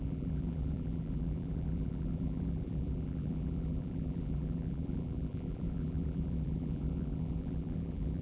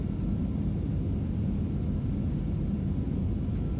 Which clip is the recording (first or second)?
second